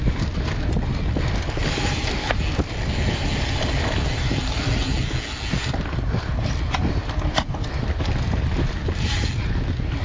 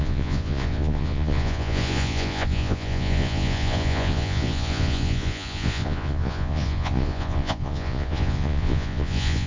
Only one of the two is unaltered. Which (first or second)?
first